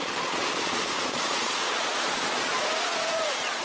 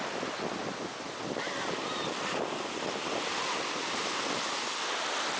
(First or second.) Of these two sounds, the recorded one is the second